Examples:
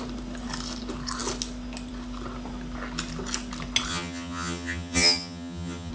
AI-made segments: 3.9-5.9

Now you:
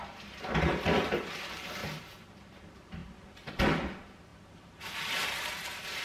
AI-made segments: 1.8-2.6; 4.3-6.0

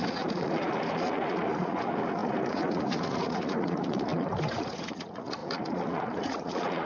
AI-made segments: 0.0-6.9

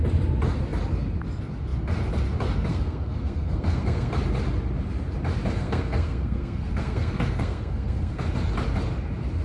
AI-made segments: 2.7-4.1; 5.6-8.2

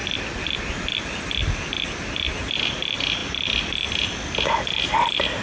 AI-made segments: none